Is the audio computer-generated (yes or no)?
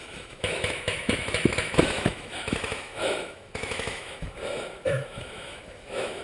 yes